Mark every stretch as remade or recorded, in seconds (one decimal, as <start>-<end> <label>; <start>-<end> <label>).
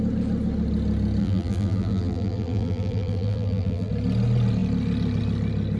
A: 0.0-1.2 recorded; 1.2-3.9 remade; 3.9-5.8 recorded